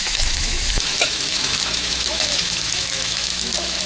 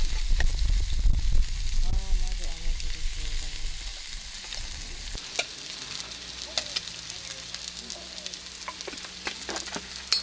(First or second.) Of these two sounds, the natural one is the second